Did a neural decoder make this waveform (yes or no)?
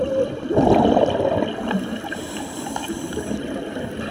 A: no